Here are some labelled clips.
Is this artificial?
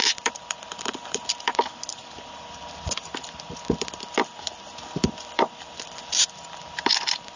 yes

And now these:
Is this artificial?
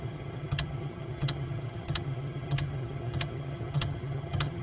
yes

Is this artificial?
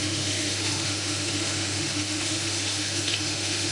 yes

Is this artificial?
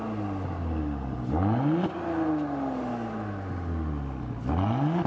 no